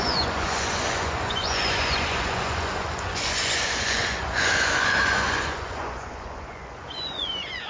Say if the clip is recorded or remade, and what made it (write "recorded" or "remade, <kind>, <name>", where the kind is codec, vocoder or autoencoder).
remade, vocoder, Vocos